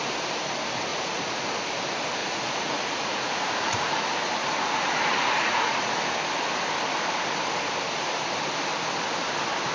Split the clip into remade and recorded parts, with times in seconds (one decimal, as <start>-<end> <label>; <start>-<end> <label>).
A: 0.0-0.9 recorded; 0.9-1.4 remade; 1.4-2.2 recorded; 2.2-4.0 remade; 4.0-4.4 recorded; 4.4-5.9 remade; 5.9-9.7 recorded